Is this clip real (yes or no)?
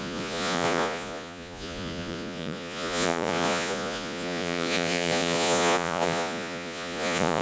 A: no